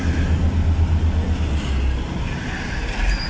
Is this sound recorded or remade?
recorded